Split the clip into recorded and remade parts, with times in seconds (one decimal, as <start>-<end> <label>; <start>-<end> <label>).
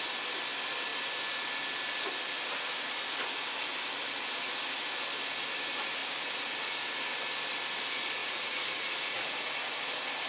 0.0-8.2 recorded; 8.2-9.3 remade; 9.3-10.3 recorded